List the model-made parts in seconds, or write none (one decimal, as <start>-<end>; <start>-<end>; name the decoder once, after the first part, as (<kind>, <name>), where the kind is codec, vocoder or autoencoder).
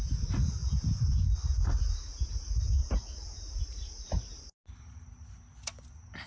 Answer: none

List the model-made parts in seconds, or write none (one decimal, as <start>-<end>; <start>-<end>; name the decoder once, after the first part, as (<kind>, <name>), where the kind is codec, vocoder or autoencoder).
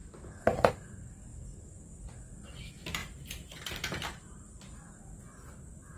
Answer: 3.0-5.0 (vocoder, BigVGAN v2)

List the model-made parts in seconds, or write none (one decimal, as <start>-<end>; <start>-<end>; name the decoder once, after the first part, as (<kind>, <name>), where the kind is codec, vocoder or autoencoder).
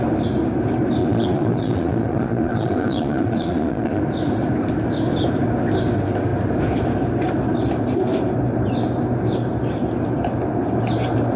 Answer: 1.0-4.0 (vocoder, Vocos)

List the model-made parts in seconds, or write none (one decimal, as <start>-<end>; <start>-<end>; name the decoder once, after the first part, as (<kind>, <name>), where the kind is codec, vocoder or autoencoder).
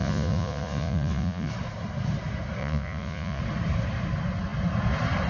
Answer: 0.0-1.5 (vocoder, Vocos); 2.6-3.4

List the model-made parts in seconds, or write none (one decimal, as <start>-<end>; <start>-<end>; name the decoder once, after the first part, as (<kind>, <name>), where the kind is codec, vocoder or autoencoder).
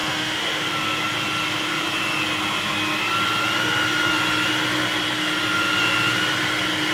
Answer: 0.0-0.6 (autoencoder, DAC-VAE)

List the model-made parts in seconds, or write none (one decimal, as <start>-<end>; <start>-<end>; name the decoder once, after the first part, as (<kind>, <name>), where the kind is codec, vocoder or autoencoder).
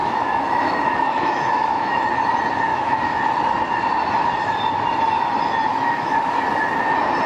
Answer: 0.0-2.1 (autoencoder, DAC-VAE); 2.7-3.2; 5.7-6.3